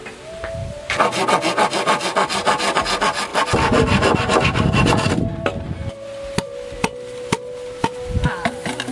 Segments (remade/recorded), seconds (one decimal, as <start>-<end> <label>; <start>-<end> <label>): 0.0-8.9 recorded